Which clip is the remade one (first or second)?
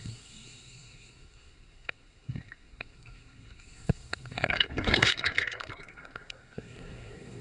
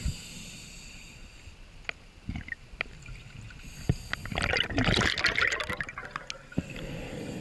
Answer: first